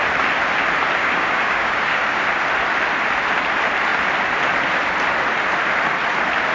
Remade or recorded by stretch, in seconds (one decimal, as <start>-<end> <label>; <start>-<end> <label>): 0.0-1.0 recorded; 1.0-2.2 remade; 2.2-6.5 recorded